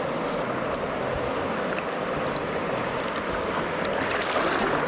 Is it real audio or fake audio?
real